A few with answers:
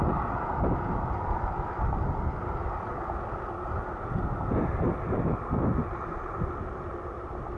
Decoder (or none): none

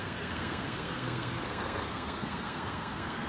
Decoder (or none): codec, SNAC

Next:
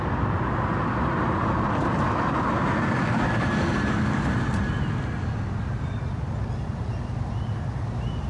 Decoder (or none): none